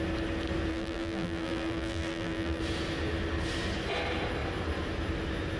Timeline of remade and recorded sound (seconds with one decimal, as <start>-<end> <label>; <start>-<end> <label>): 0.0-0.7 recorded; 0.7-2.6 remade; 2.6-5.6 recorded